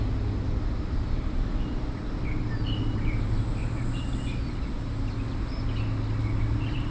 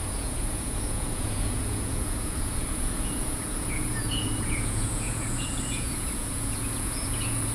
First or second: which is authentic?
first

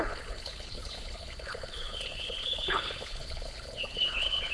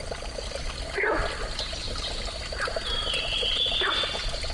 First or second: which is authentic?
second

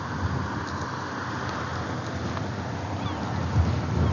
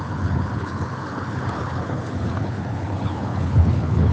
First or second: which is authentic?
first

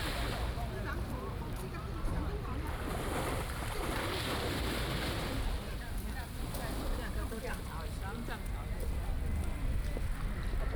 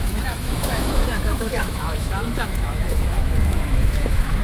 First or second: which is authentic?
first